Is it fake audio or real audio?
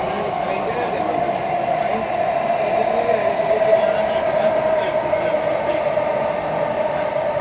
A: real